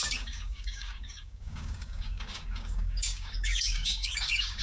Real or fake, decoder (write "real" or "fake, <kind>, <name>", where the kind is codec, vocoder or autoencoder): fake, codec, DAC